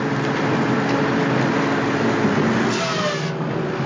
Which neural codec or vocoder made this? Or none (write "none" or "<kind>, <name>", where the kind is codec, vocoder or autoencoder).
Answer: none